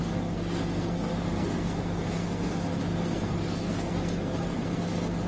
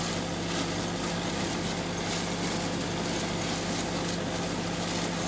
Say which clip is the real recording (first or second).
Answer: second